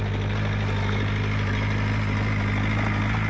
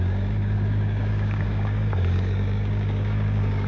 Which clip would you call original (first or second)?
first